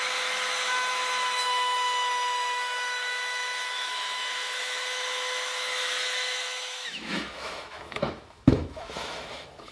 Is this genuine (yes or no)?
no